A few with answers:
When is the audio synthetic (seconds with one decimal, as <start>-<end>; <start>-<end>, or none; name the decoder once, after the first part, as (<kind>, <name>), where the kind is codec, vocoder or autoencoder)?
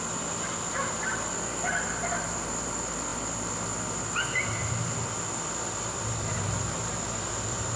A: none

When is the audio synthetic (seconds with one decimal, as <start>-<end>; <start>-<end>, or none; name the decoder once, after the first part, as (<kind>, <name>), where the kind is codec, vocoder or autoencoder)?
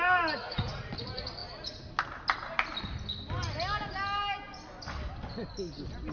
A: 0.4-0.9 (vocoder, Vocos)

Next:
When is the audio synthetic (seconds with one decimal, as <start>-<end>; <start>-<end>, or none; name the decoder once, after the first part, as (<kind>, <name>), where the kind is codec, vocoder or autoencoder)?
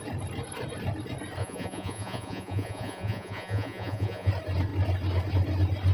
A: 1.4-4.3 (vocoder, Vocos)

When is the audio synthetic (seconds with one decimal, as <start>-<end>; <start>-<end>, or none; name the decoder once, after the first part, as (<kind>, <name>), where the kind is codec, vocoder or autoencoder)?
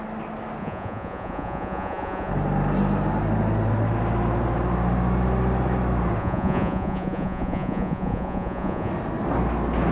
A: 0.6-2.3 (vocoder, Vocos); 6.2-8.9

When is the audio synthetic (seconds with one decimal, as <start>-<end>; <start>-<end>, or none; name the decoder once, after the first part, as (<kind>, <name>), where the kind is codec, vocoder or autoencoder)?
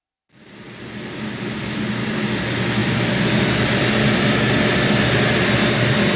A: none